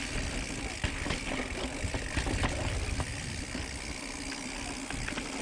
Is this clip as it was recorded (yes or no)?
yes